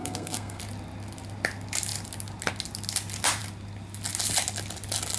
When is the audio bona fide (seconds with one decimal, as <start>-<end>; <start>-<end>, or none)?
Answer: 0.6-5.2